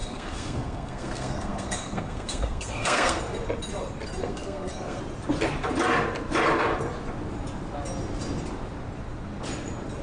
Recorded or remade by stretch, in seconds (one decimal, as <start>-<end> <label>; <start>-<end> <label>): 0.0-3.2 remade; 3.2-4.2 recorded; 4.2-5.0 remade; 5.0-10.0 recorded